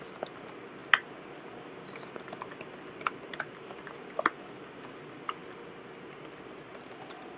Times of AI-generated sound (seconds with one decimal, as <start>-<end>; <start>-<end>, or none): none